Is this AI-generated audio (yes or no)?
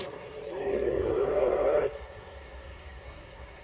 yes